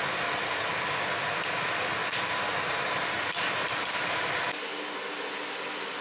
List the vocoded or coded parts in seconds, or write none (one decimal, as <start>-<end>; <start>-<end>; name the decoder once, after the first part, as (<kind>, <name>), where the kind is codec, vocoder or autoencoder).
none